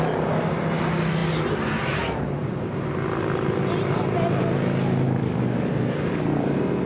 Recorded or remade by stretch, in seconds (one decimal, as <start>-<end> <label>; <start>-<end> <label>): 0.0-5.2 recorded; 5.2-6.2 remade; 6.2-6.9 recorded